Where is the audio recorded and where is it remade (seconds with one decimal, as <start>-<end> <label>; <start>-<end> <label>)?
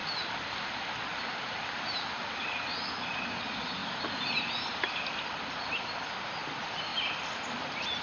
0.0-8.0 recorded